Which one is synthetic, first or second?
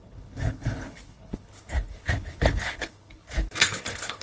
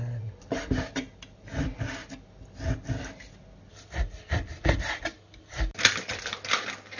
first